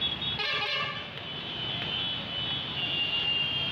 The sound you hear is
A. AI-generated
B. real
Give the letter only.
B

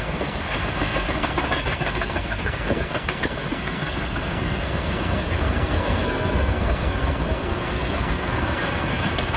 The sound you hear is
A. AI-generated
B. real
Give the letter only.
A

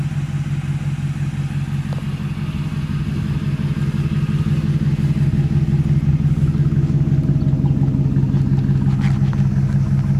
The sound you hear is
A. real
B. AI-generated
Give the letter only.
A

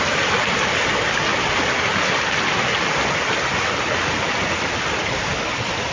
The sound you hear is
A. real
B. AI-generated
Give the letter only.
A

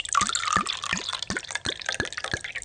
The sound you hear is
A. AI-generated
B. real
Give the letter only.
B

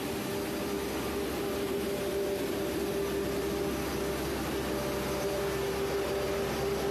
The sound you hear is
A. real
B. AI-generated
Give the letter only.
A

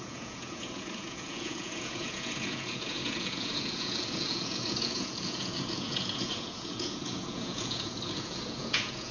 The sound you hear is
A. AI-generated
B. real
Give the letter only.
A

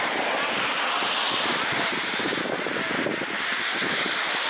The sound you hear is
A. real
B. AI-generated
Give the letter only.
A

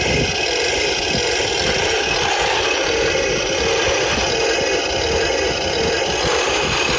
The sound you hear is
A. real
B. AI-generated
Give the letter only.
A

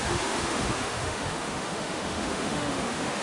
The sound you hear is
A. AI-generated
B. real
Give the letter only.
A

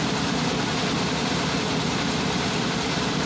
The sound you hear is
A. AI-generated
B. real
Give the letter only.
B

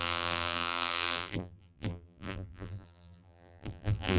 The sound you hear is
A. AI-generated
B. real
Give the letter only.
A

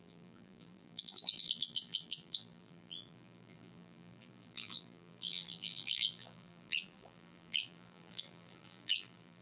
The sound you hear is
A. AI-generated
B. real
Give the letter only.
A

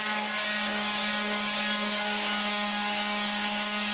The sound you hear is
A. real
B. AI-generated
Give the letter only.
B